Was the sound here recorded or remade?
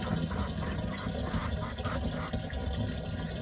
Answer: recorded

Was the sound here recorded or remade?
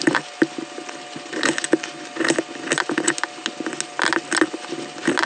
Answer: recorded